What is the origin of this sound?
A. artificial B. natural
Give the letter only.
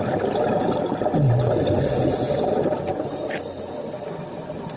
B